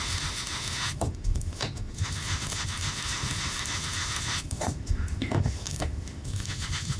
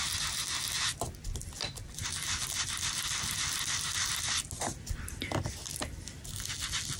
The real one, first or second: second